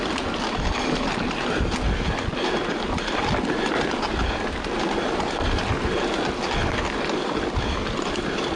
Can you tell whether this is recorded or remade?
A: recorded